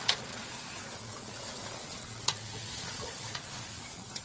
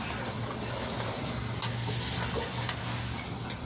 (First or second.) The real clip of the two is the second